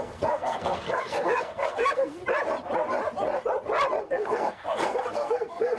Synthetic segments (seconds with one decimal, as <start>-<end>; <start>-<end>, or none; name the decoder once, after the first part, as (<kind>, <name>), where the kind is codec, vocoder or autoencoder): 0.0-2.2 (codec, SNAC); 4.0-5.8